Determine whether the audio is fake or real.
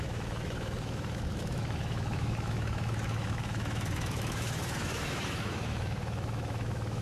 fake